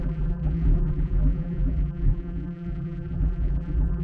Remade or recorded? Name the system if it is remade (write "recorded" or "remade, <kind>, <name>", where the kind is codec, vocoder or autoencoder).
remade, vocoder, BigVGAN v2